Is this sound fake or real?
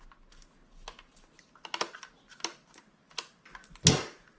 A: real